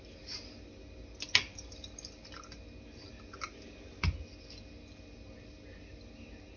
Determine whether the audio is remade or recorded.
recorded